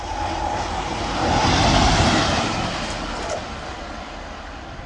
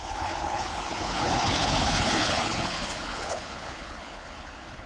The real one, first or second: first